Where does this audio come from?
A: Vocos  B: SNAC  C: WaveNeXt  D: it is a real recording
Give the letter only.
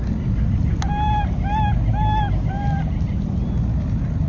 D